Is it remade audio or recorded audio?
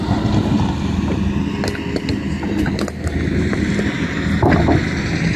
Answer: recorded